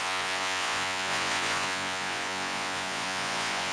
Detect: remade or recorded remade